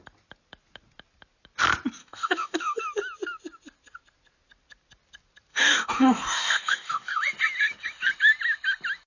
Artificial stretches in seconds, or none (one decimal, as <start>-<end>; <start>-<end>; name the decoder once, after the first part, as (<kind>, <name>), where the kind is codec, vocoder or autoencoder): 2.0-2.8 (codec, DAC); 5.5-7.2